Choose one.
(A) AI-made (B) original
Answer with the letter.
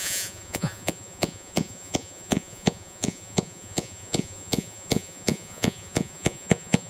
A